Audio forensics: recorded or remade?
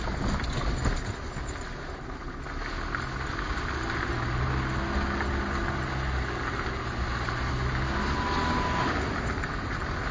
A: recorded